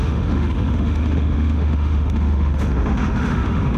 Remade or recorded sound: remade